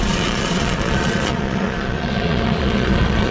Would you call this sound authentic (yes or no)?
no